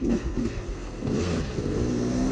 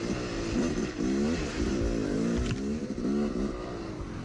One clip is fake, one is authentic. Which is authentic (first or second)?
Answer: second